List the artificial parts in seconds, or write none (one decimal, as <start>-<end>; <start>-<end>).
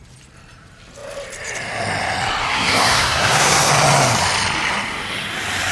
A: 2.4-3.7